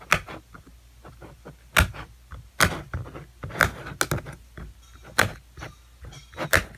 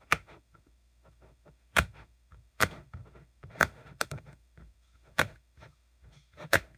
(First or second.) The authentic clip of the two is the first